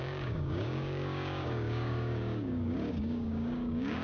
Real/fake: fake